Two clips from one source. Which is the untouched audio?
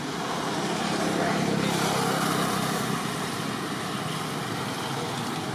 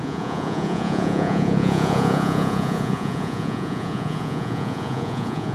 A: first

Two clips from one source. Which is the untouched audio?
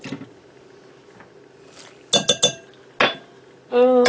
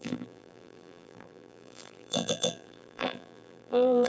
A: first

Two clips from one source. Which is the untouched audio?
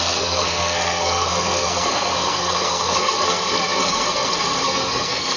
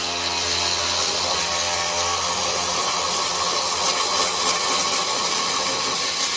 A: second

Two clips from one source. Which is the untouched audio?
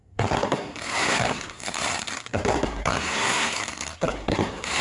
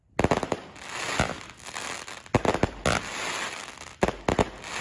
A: second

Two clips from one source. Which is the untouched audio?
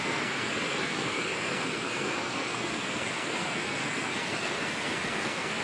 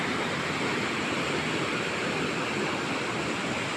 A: second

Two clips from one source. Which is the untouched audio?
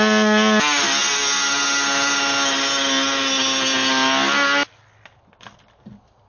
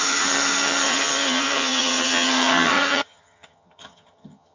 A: first